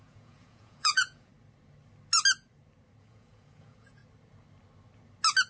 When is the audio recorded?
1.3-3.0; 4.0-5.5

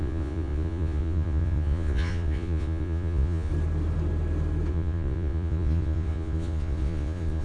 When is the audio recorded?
3.5-4.7

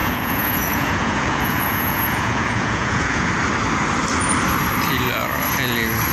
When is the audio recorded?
3.3-6.1

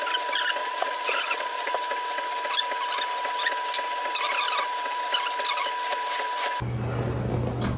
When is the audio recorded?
0.0-0.6; 1.7-7.8